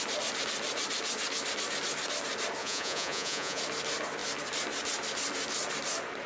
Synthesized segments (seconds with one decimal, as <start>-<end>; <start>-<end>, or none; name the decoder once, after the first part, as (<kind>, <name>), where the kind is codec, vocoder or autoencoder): 2.6-3.6 (vocoder, Vocos)